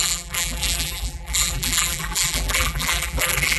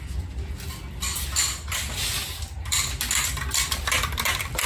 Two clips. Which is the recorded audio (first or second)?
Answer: second